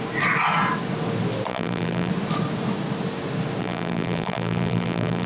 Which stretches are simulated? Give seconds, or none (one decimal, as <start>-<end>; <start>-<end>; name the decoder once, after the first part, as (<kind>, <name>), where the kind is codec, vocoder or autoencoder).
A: 1.5-2.1 (vocoder, BigVGAN v2); 3.6-5.3